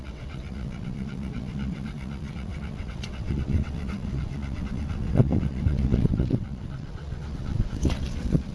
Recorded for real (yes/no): no